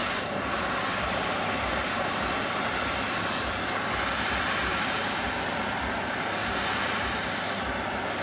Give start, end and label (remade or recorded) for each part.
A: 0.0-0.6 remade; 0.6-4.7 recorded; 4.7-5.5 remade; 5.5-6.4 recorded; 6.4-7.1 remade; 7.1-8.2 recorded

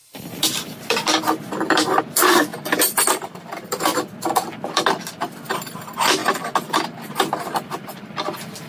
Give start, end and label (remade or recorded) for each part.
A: 0.0-6.2 remade; 6.2-7.5 recorded; 7.5-8.7 remade

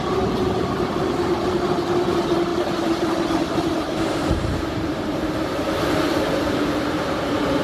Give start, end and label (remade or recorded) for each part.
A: 0.0-7.6 remade

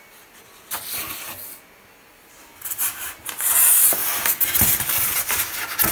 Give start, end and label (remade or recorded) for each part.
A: 0.0-2.1 recorded; 2.1-3.5 remade; 3.5-5.9 recorded